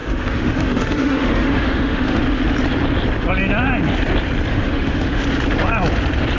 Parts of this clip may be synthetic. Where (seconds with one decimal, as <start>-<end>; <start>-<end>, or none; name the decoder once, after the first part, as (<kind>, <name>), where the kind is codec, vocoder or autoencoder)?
0.0-2.2 (autoencoder, DAC-VAE); 4.5-5.2